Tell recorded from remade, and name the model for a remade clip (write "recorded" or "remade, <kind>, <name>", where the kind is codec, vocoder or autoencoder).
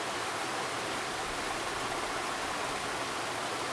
recorded